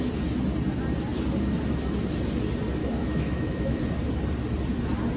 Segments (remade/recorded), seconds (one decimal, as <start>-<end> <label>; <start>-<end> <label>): 0.0-2.8 recorded; 2.8-3.8 remade; 3.8-5.2 recorded